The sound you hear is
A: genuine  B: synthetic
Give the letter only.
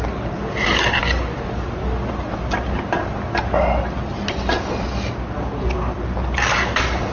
A